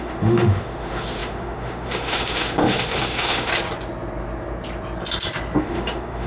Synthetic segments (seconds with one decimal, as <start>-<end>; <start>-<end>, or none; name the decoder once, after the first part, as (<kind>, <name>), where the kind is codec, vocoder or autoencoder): 0.0-3.5 (autoencoder, DAC-VAE); 5.6-6.3